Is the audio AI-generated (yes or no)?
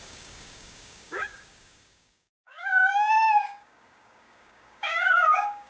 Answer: yes